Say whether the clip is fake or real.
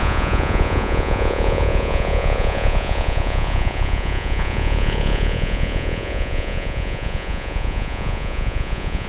fake